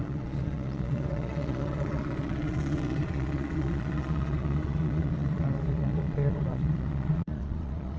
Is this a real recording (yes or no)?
no